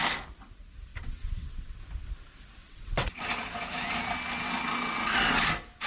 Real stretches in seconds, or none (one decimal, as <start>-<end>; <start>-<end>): 0.0-0.9; 1.8-2.6; 3.1-5.9